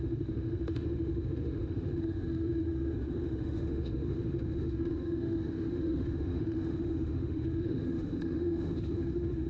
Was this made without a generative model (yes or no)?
no